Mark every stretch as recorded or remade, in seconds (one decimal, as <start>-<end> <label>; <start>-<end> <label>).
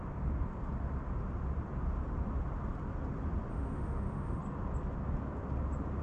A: 0.0-3.5 recorded; 3.5-4.4 remade; 4.4-6.0 recorded